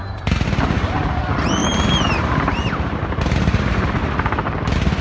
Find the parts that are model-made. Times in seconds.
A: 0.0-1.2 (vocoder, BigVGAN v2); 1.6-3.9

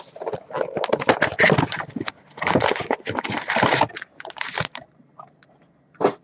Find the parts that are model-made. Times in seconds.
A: 2.3-5.6 (vocoder, BigVGAN v2)

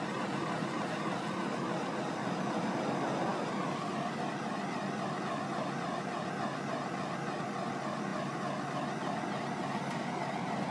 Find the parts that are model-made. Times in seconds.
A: none

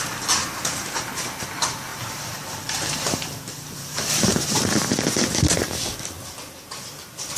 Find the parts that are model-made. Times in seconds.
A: 0.4-1.2 (vocoder, BigVGAN v2); 1.9-4.6

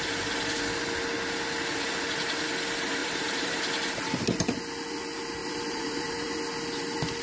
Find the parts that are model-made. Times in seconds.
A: 3.0-3.6 (vocoder, BigVGAN v2); 5.4-6.4

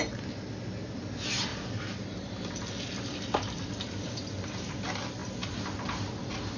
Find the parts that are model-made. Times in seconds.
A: 1.5-4.7 (vocoder, BigVGAN v2); 5.2-6.0